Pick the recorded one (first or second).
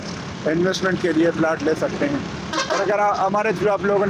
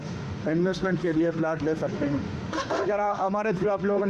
first